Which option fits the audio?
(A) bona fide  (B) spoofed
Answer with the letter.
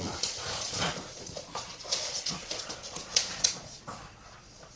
B